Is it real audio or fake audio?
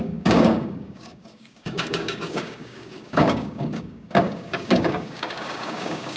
fake